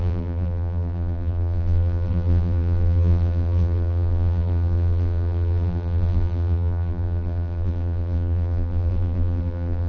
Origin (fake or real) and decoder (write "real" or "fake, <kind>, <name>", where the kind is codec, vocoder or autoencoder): fake, vocoder, BigVGAN v2